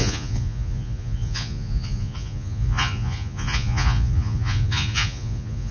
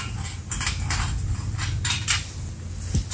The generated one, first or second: first